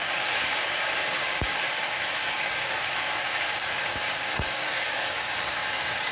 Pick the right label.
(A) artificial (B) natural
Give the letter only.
A